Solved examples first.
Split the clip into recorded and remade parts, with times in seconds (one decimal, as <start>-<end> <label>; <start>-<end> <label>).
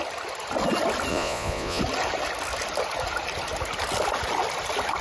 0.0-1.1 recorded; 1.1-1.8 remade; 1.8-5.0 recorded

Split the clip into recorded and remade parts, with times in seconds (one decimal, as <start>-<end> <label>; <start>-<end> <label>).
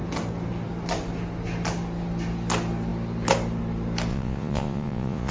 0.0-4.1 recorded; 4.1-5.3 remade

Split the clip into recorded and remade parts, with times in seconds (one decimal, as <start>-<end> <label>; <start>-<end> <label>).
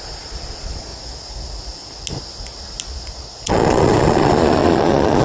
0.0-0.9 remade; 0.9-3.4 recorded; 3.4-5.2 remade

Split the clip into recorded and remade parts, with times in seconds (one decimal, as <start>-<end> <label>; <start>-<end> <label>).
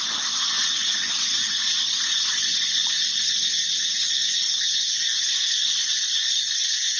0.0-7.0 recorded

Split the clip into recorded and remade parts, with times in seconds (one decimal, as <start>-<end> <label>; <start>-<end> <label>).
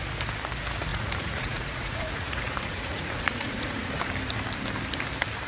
0.0-0.9 recorded; 0.9-3.9 remade; 3.9-5.5 recorded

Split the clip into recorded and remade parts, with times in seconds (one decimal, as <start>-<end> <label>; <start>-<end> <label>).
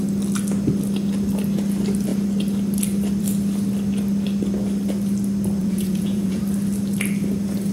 0.0-5.6 recorded; 5.6-6.4 remade; 6.4-7.7 recorded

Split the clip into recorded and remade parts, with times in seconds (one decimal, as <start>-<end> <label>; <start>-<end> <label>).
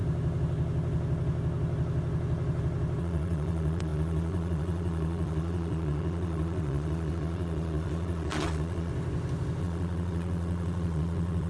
0.0-3.0 recorded; 3.0-8.9 remade; 8.9-9.6 recorded; 9.6-11.5 remade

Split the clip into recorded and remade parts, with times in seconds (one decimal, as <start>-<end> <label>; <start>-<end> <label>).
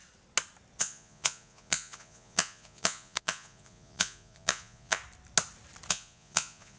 0.0-0.8 recorded; 0.8-5.0 remade; 5.0-5.9 recorded; 5.9-6.8 remade